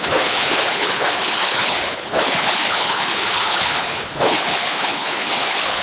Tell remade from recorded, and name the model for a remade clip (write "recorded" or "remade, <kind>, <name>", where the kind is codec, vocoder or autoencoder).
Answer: remade, codec, HILCodec